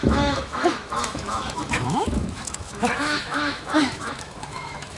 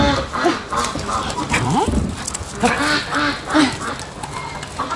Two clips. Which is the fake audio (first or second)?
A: first